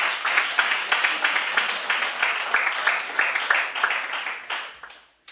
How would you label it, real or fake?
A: real